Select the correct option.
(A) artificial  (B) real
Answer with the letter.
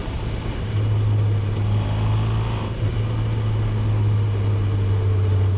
B